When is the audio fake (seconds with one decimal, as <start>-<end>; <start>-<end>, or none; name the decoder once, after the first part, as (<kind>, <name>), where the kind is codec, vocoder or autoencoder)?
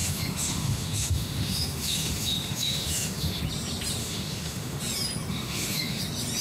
0.0-3.4 (autoencoder, DAC-VAE); 4.0-4.8; 5.3-6.0